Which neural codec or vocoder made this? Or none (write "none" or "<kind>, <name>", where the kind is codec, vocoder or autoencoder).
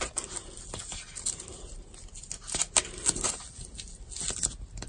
none